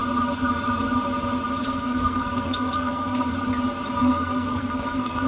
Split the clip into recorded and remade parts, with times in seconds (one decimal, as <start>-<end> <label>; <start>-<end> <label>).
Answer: 0.0-1.6 recorded; 1.6-3.3 remade; 3.3-4.0 recorded; 4.0-5.3 remade